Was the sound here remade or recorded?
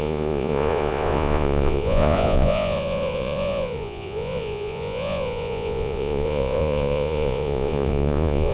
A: remade